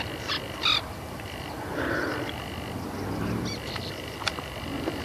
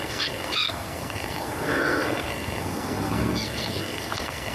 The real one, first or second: first